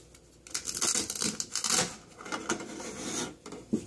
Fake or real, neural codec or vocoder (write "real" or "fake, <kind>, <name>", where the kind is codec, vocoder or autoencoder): real